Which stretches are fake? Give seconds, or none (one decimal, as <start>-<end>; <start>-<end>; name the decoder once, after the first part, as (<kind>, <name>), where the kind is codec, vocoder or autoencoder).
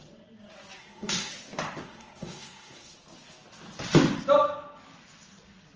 0.8-1.3 (codec, SNAC); 1.8-2.9